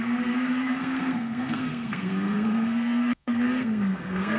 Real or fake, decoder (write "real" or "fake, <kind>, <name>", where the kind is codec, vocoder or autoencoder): fake, codec, SNAC